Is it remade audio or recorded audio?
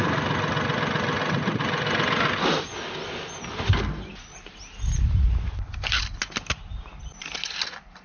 recorded